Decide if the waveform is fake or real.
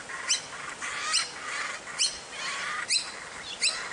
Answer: real